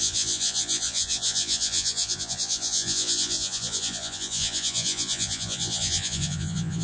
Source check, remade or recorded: remade